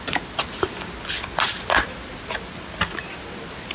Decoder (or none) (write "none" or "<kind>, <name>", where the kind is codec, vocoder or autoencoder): none